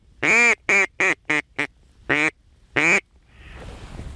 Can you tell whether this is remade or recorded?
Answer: recorded